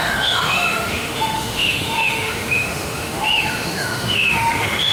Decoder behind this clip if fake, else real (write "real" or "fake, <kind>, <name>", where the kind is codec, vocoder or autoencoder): fake, autoencoder, DAC-VAE